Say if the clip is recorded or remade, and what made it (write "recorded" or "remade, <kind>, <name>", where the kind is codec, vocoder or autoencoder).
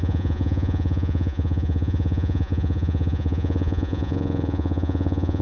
remade, vocoder, Vocos